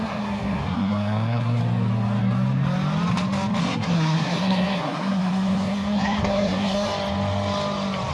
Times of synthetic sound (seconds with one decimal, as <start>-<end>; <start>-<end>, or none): 0.0-1.6; 3.6-6.9